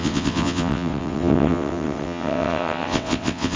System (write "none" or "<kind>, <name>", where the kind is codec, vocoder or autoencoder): vocoder, WaveNeXt